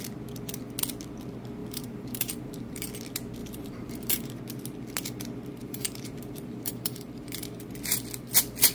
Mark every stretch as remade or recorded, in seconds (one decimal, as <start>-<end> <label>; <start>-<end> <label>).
0.0-1.6 recorded; 1.6-2.9 remade; 2.9-3.4 recorded; 3.4-4.4 remade; 4.4-5.6 recorded; 5.6-7.7 remade; 7.7-8.7 recorded